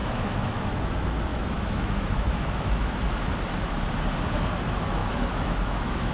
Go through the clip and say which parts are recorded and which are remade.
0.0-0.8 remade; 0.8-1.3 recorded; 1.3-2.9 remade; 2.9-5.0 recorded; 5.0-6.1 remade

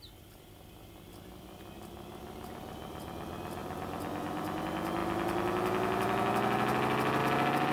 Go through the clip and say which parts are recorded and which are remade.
0.0-7.7 recorded

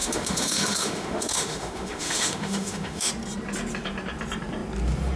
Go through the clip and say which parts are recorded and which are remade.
0.0-3.1 remade; 3.1-5.2 recorded

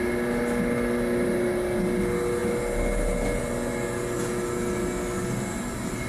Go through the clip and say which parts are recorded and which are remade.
0.0-6.1 recorded

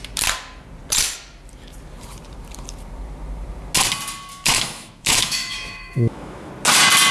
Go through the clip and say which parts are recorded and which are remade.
0.0-4.3 recorded; 4.3-6.5 remade; 6.5-7.1 recorded

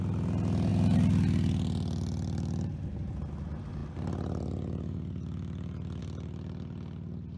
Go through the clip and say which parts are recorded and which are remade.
0.0-7.4 recorded